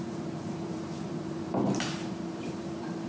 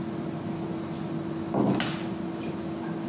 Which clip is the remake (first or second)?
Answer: first